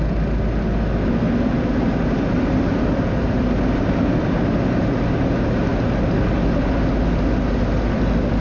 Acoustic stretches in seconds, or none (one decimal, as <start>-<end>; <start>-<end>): 0.0-8.4